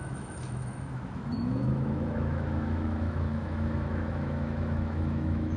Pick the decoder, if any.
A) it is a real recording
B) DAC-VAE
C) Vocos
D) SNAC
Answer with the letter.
B